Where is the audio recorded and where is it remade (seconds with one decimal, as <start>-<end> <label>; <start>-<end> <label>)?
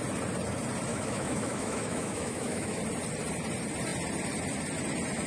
0.0-0.9 recorded; 0.9-2.8 remade; 2.8-5.3 recorded